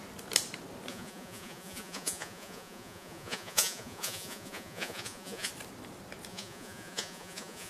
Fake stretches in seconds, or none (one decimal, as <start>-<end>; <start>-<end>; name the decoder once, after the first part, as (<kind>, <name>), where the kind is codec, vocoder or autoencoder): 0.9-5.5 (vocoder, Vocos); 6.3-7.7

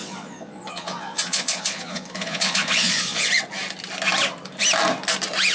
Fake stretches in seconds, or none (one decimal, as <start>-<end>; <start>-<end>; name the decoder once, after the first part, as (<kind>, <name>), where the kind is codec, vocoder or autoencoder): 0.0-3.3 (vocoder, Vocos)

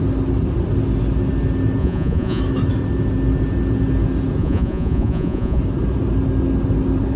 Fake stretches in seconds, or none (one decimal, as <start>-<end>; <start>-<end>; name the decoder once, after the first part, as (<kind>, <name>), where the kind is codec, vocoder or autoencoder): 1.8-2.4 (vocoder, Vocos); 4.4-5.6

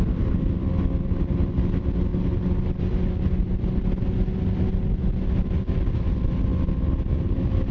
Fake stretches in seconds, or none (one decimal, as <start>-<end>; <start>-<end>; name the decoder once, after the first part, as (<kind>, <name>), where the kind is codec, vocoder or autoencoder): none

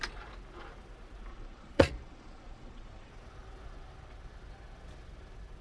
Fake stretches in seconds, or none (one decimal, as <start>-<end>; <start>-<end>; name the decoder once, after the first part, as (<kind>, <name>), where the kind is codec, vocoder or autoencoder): 1.3-3.1 (vocoder, Vocos)

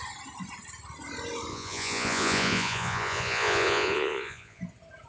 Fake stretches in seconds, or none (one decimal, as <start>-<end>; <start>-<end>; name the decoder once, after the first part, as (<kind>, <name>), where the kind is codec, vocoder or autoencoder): 1.5-4.6 (vocoder, Vocos)

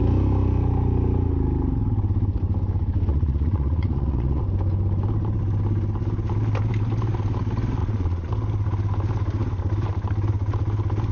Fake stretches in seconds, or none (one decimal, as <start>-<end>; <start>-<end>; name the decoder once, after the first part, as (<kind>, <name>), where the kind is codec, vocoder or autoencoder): 3.1-4.4 (vocoder, Vocos); 7.8-8.3

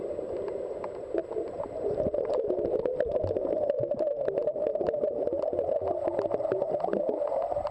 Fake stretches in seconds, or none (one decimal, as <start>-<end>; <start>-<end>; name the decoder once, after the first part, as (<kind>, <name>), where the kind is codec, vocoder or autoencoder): none